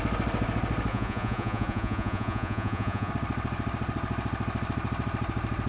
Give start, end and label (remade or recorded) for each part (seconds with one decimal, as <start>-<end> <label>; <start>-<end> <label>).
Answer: 0.0-0.9 recorded; 0.9-3.1 remade; 3.1-5.7 recorded